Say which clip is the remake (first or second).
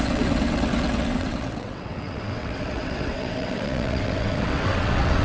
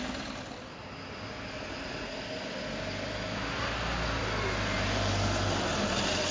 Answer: first